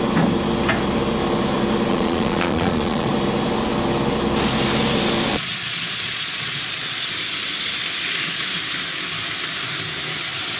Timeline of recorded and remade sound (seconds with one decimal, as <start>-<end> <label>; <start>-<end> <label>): 0.0-1.9 recorded; 1.9-3.1 remade; 3.1-5.3 recorded; 5.3-7.1 remade; 7.1-10.6 recorded